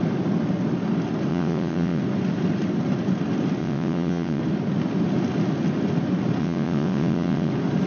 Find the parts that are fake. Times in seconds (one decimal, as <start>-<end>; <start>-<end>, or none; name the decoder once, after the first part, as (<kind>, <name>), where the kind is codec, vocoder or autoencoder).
1.3-2.0 (vocoder, WaveNeXt); 3.6-4.4; 6.4-7.5

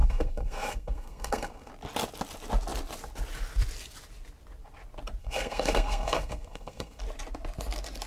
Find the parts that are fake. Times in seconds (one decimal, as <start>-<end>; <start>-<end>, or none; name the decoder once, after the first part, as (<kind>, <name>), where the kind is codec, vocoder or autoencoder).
0.0-1.7 (codec, SNAC); 5.2-7.0